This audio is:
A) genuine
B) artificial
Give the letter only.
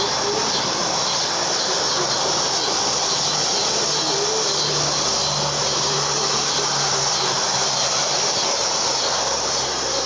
A